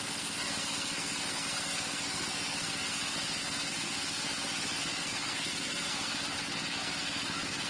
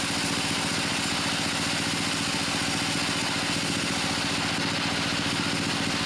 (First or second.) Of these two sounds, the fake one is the first